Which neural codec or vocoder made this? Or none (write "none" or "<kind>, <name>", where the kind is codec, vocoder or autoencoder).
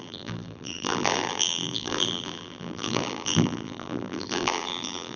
vocoder, BigVGAN v2